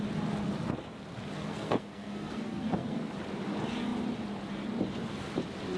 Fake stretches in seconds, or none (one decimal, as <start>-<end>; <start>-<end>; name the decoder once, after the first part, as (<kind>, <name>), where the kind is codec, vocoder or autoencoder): 1.4-3.1 (codec, SNAC)